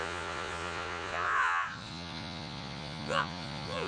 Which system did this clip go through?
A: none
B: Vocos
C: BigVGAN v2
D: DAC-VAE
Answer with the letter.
B